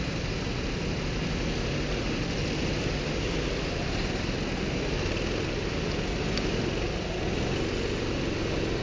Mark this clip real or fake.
real